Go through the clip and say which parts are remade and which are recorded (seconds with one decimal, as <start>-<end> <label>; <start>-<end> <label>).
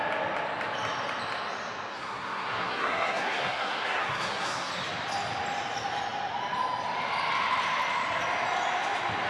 0.0-1.9 recorded; 1.9-4.7 remade; 4.7-9.3 recorded